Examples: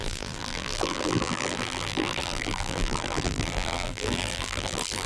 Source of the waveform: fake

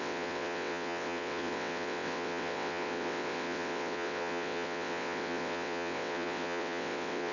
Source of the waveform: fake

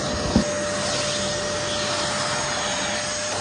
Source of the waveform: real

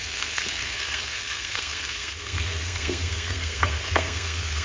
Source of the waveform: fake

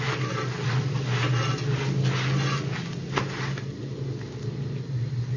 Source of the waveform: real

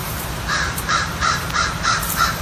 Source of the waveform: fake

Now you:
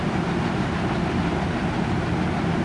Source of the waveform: real